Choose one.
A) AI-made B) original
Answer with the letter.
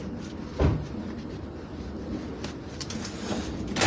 B